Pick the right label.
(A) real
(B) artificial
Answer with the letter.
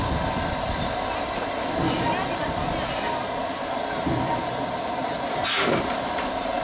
A